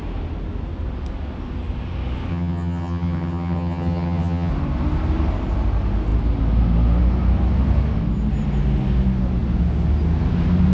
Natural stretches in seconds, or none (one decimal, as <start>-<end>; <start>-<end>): 0.0-2.3; 4.5-10.7